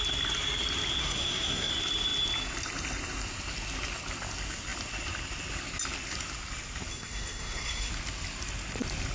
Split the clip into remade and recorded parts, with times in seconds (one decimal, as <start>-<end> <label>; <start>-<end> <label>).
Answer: 0.0-1.0 recorded; 1.0-1.7 remade; 1.7-6.9 recorded; 6.9-7.9 remade; 7.9-9.1 recorded